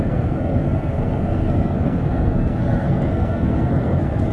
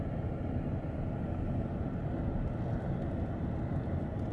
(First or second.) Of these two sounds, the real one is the second